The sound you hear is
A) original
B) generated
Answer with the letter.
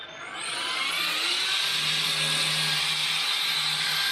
A